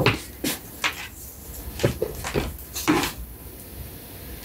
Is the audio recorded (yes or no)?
yes